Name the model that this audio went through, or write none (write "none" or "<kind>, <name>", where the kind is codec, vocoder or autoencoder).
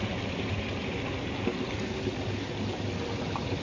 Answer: none